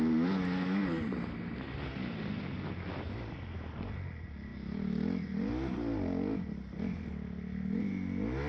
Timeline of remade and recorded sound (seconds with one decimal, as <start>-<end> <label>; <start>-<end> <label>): 0.0-8.5 recorded